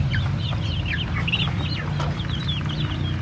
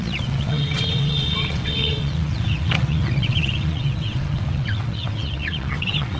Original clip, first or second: first